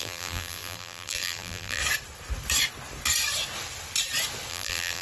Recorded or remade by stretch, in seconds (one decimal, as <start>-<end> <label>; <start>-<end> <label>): 0.0-1.8 remade; 1.8-4.5 recorded; 4.5-5.0 remade